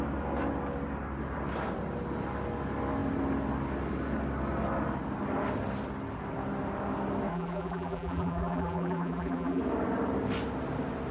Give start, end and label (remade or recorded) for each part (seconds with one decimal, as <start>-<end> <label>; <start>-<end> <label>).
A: 0.0-7.3 recorded; 7.3-9.6 remade; 9.6-11.1 recorded